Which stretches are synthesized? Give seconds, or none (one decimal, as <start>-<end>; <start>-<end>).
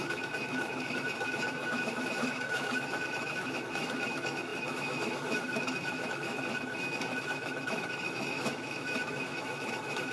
0.0-10.1